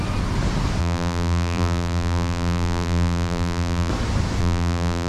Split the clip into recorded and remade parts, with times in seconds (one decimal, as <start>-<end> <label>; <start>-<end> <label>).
0.0-0.8 recorded; 0.8-3.9 remade; 3.9-4.4 recorded; 4.4-5.1 remade